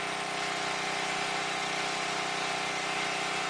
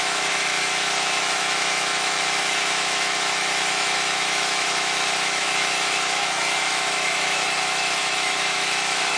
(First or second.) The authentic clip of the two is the first